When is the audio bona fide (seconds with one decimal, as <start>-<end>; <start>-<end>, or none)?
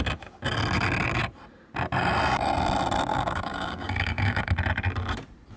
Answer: 0.0-3.1; 4.5-5.6